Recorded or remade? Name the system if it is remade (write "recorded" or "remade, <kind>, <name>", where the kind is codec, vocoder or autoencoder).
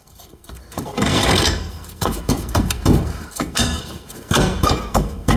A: remade, codec, SNAC